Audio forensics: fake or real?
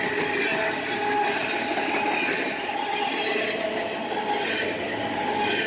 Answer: real